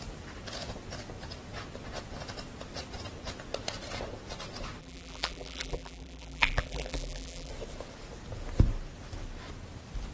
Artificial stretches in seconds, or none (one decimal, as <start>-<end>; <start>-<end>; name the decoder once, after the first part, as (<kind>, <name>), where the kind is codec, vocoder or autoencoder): 4.8-7.5 (vocoder, BigVGAN v2)